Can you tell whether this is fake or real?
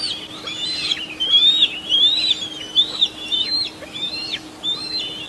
real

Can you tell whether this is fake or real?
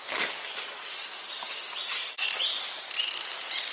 real